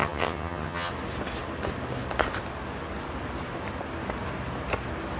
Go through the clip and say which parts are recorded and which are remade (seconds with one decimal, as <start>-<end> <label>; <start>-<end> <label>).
0.0-0.9 remade; 0.9-5.2 recorded